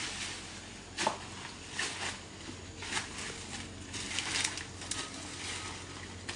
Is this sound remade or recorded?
recorded